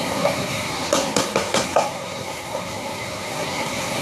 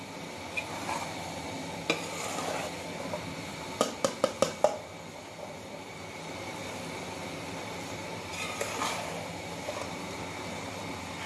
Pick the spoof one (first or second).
first